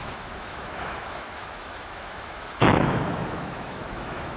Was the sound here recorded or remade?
remade